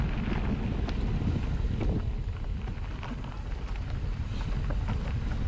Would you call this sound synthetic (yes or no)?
no